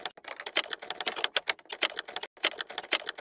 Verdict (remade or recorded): recorded